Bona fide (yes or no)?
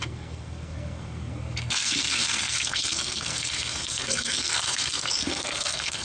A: no